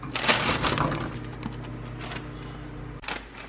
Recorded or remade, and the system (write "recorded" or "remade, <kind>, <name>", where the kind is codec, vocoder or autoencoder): recorded